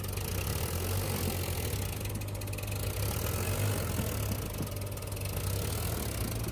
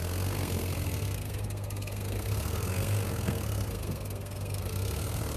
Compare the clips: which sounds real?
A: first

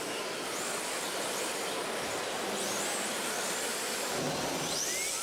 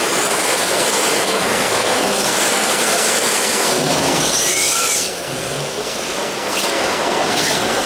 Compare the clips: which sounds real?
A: first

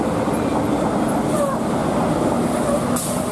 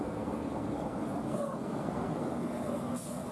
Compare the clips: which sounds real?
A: first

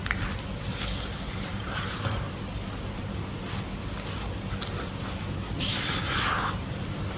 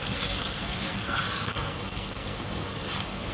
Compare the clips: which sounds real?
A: first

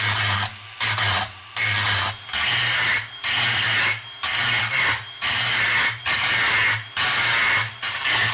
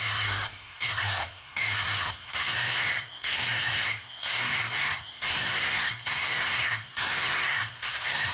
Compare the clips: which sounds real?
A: first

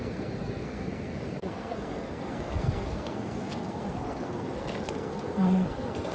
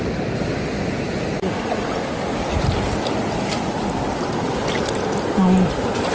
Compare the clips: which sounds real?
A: second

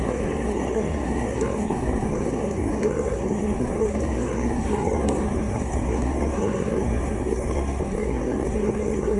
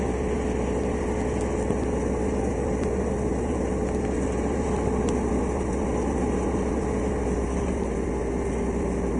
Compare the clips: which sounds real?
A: second